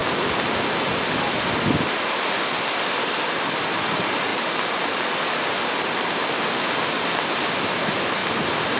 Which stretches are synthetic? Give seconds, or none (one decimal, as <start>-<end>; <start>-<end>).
none